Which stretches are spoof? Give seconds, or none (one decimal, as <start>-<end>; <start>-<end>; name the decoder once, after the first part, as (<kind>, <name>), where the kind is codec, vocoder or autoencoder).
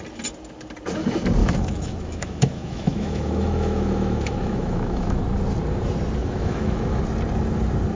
1.4-5.2 (autoencoder, DAC-VAE); 6.2-7.0